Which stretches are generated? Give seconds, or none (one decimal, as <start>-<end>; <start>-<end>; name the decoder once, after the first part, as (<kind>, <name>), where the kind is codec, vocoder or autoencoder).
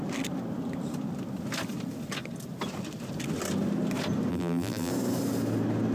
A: 4.3-4.9 (vocoder, BigVGAN v2)